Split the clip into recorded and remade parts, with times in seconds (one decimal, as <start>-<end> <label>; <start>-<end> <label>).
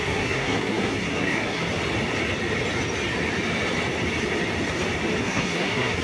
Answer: 0.0-1.6 remade; 1.6-5.2 recorded; 5.2-6.0 remade